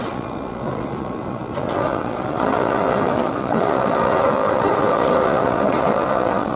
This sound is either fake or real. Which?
fake